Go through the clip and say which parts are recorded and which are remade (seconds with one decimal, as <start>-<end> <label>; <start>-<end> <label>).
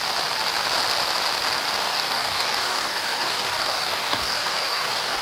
0.0-1.8 recorded; 1.8-5.2 remade